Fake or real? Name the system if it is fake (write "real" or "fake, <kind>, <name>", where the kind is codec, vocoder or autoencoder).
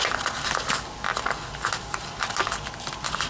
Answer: real